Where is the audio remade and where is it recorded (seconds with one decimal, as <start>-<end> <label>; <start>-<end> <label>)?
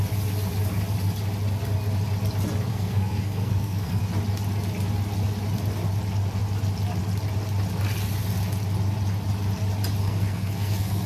0.0-2.7 recorded; 2.7-4.0 remade; 4.0-10.0 recorded; 10.0-11.1 remade